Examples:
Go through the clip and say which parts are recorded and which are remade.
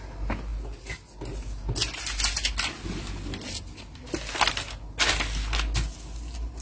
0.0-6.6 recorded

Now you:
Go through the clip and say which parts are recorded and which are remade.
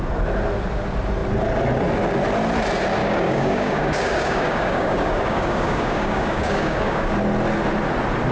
0.0-3.0 recorded; 3.0-7.1 remade; 7.1-8.3 recorded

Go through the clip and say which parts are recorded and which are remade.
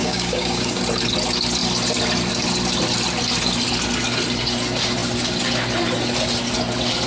0.0-0.8 remade; 0.8-7.1 recorded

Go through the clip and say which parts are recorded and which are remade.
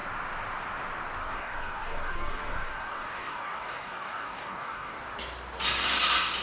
0.0-1.2 recorded; 1.2-5.0 remade; 5.0-6.4 recorded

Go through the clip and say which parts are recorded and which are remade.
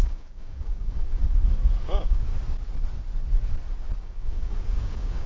0.0-1.2 remade; 1.2-1.8 recorded; 1.8-2.3 remade; 2.3-4.0 recorded; 4.0-5.3 remade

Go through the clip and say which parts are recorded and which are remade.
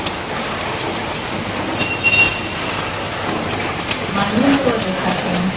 0.0-5.6 recorded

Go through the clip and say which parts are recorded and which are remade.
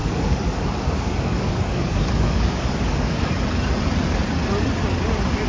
0.0-3.3 remade; 3.3-5.5 recorded